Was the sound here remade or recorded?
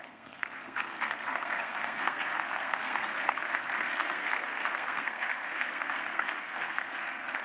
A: remade